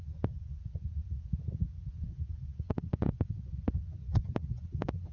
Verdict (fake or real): fake